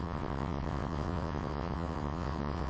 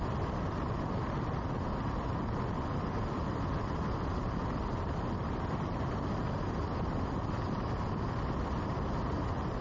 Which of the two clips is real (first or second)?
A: second